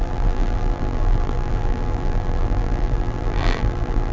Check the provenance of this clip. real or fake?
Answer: fake